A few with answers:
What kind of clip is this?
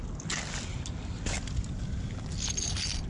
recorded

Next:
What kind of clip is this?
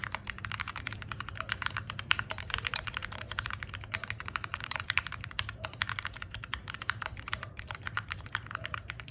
remade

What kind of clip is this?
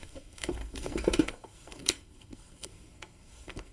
remade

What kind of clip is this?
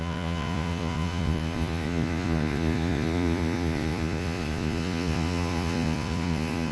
remade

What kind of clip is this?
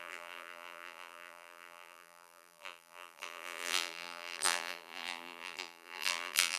remade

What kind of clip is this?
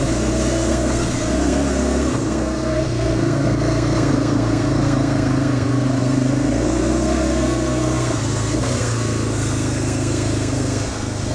remade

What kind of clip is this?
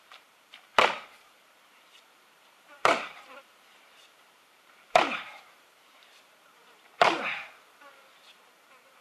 remade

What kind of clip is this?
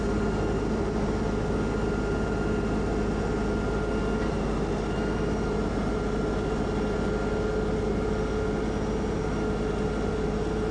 recorded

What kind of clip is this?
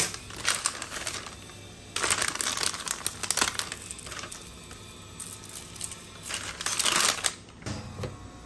recorded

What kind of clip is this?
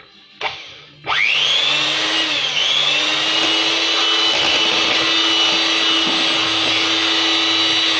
recorded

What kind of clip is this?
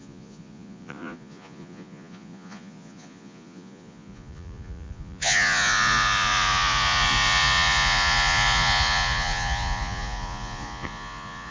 remade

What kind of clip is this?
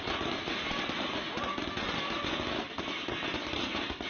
recorded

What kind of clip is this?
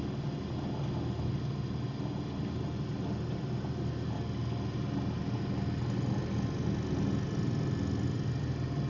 recorded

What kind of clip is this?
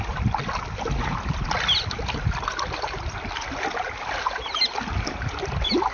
recorded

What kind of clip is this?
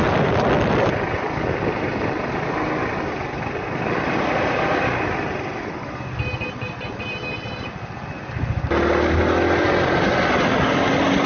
recorded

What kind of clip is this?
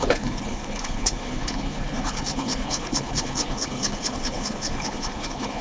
remade